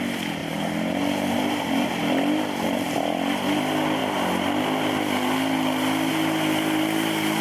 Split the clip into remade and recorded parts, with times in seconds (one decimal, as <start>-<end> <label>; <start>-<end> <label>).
0.0-0.4 recorded; 0.4-1.9 remade; 1.9-7.4 recorded